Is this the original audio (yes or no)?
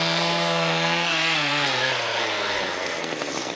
no